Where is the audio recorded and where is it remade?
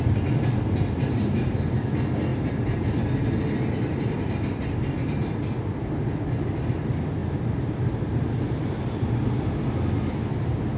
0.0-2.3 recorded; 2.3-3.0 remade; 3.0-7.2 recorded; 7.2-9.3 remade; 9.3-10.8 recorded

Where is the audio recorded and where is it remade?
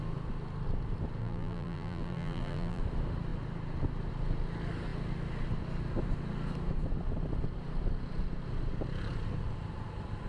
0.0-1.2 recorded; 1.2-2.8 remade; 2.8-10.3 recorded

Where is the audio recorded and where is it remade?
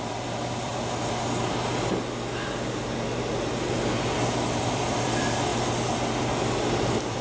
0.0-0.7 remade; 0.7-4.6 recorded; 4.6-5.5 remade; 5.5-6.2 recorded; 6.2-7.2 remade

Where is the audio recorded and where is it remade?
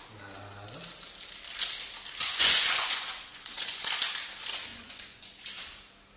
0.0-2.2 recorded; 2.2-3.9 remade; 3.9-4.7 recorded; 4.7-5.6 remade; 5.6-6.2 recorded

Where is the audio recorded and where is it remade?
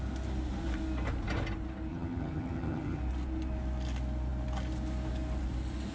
0.0-1.9 recorded; 1.9-3.0 remade; 3.0-5.9 recorded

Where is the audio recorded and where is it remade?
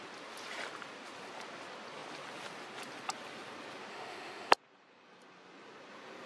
0.0-3.9 recorded; 3.9-4.5 remade; 4.5-6.3 recorded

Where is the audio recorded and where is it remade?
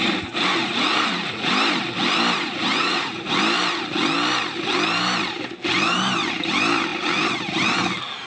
0.0-0.6 recorded; 0.6-1.5 remade; 1.5-2.7 recorded; 2.7-3.3 remade; 3.3-8.3 recorded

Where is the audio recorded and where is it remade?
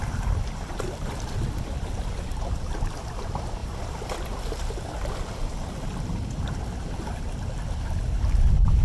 0.0-3.6 remade; 3.6-7.2 recorded; 7.2-8.8 remade